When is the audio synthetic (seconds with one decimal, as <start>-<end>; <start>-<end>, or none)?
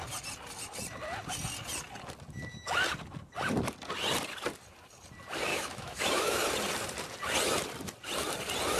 5.5-6.4